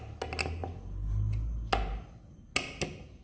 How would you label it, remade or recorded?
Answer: recorded